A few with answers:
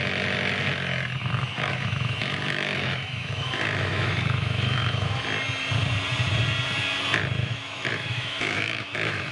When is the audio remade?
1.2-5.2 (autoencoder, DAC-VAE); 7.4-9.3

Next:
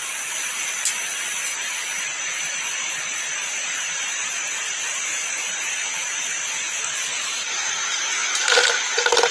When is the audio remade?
none

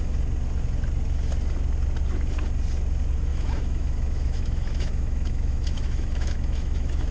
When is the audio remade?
3.3-7.1 (autoencoder, DAC-VAE)

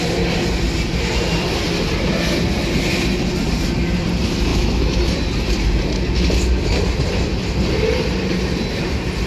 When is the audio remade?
4.5-5.0 (autoencoder, DAC-VAE)

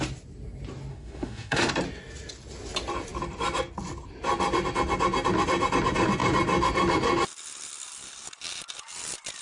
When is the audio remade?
0.9-1.7 (autoencoder, DAC-VAE)

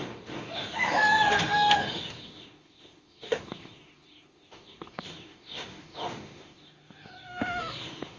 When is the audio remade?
0.0-8.2 (autoencoder, DAC-VAE)

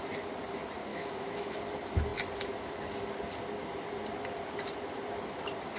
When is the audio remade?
0.9-1.6 (autoencoder, DAC-VAE)

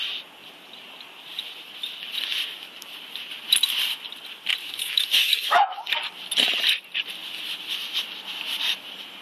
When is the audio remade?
4.6-5.8 (autoencoder, DAC-VAE)